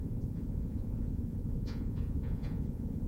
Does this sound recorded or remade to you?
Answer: remade